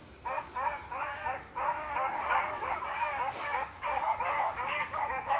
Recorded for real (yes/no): no